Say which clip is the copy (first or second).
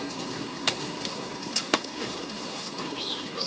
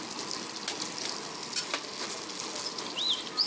first